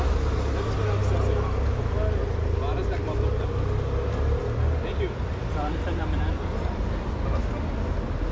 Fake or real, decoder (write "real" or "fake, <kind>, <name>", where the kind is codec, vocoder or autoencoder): real